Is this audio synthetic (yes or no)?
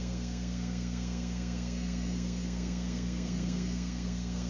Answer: yes